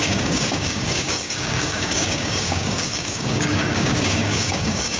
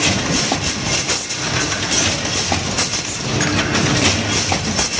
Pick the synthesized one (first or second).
first